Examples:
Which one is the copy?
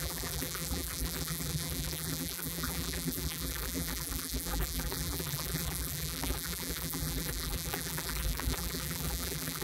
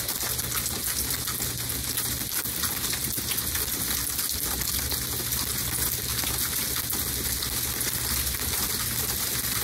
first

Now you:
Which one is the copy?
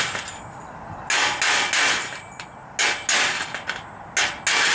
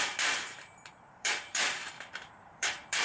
second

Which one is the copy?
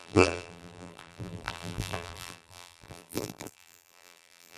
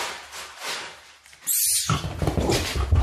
first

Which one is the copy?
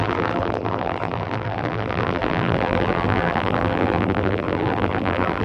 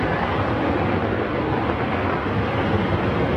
first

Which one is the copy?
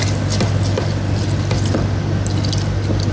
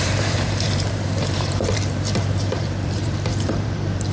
second